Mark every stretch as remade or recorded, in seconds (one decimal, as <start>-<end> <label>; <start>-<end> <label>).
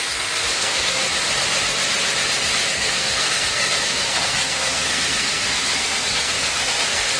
0.0-1.0 remade; 1.0-2.7 recorded; 2.7-7.2 remade